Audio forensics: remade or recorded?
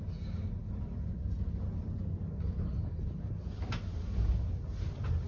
recorded